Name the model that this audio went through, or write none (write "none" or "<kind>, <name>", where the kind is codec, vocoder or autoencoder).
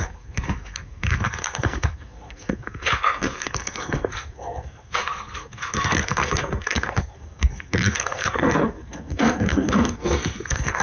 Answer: codec, SNAC